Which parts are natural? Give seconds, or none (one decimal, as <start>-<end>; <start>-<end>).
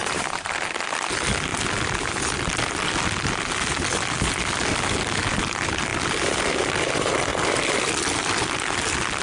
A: 0.5-9.2